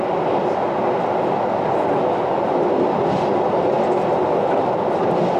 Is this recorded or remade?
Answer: recorded